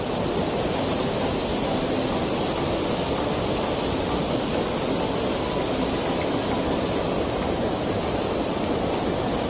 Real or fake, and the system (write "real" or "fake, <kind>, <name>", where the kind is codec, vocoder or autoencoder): real